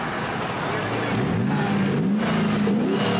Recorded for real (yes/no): yes